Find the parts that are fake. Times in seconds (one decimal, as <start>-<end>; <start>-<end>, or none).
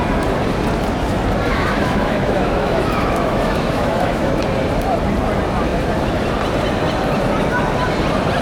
1.5-4.4